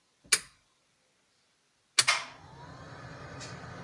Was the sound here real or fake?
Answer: real